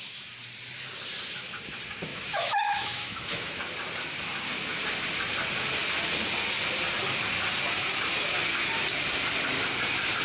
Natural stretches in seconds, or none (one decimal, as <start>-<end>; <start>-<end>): 0.0-2.1; 3.6-10.2